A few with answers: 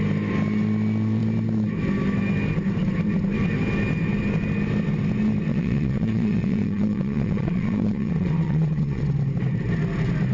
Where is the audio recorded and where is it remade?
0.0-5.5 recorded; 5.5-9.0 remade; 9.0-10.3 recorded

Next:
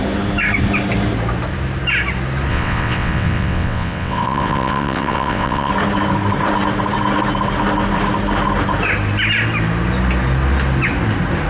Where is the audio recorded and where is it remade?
0.0-2.5 recorded; 2.5-5.7 remade; 5.7-11.5 recorded

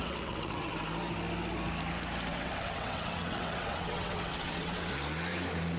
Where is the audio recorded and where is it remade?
0.0-0.8 remade; 0.8-2.3 recorded; 2.3-4.9 remade; 4.9-5.8 recorded